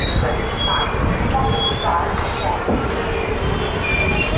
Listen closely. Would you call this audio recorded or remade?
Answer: recorded